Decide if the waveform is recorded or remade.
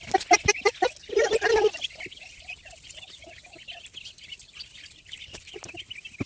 recorded